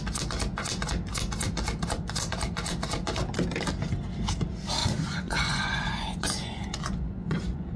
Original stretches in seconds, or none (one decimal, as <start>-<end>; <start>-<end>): 0.0-4.8